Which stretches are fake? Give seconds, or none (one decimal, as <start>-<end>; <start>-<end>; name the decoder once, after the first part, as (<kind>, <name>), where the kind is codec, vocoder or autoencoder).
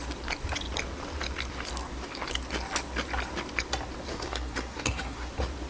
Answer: 4.1-5.3 (codec, SNAC)